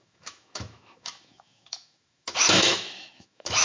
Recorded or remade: remade